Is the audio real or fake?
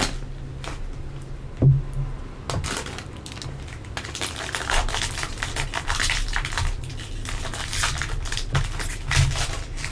real